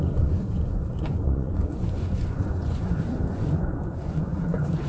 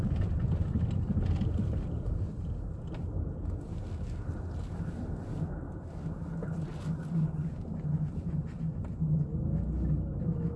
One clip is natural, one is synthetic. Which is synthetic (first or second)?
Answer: first